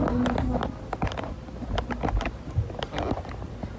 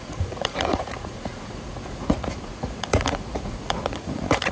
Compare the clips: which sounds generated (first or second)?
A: second